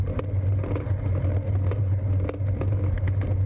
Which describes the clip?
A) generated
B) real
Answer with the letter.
B